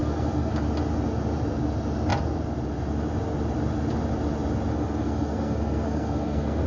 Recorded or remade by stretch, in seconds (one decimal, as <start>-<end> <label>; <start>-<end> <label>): 0.0-0.5 remade; 0.5-4.7 recorded; 4.7-6.7 remade